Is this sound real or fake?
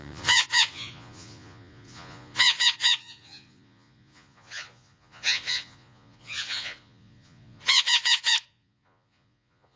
fake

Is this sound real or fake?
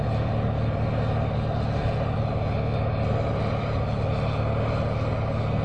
real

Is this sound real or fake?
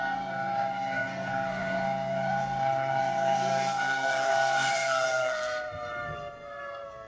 fake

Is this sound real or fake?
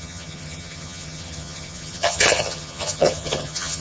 fake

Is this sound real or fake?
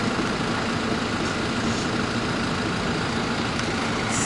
real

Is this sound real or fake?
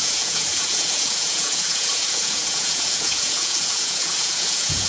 fake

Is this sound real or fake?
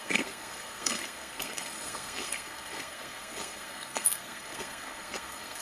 fake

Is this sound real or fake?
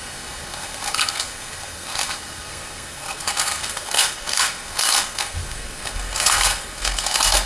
fake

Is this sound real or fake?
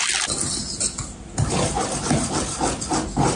real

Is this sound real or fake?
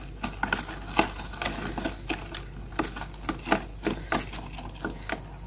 real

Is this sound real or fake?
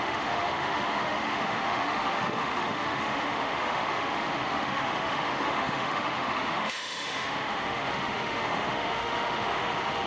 fake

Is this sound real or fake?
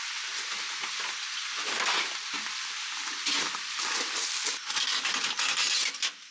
real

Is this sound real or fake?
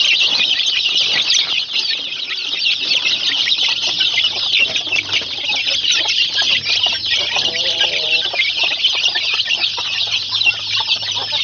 real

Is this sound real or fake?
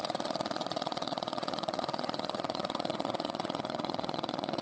fake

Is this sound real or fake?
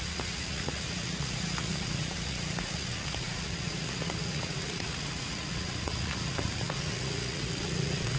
fake